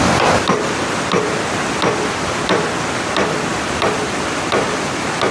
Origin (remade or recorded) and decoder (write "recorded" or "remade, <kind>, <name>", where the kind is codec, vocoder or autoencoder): recorded